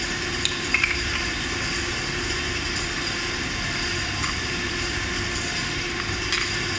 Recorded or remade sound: recorded